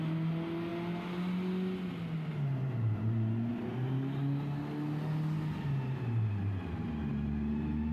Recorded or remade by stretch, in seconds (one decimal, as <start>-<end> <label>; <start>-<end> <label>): 0.0-7.9 recorded